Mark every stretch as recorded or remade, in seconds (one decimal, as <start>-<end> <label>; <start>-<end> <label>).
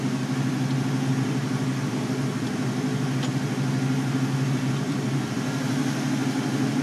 0.0-6.8 recorded